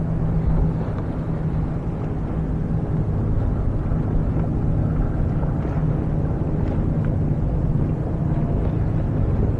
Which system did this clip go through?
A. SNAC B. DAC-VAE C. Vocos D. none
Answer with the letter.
D